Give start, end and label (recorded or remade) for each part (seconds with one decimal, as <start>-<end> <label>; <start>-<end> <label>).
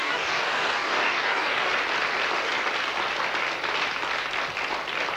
0.0-1.7 remade; 1.7-5.2 recorded